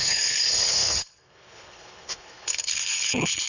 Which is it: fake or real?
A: fake